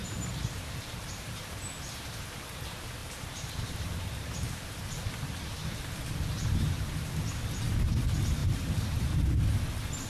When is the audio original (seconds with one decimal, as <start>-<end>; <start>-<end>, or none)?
1.4-3.0; 5.0-8.4; 9.1-10.1